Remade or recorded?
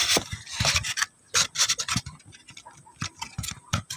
recorded